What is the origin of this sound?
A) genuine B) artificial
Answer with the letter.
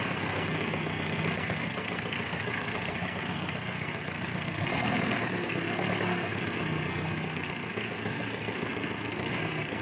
B